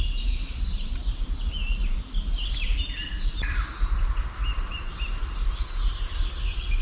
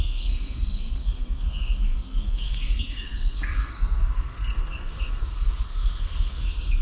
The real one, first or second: first